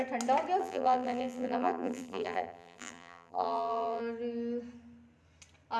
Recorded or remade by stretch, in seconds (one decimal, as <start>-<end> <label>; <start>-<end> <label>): 0.0-0.6 recorded; 0.6-4.0 remade; 4.0-5.8 recorded